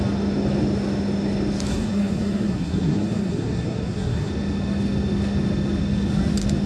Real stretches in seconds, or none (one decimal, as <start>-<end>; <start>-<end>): 0.0-1.7; 4.3-6.7